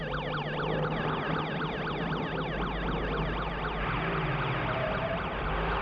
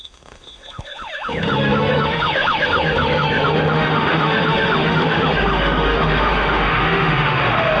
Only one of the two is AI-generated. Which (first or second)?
second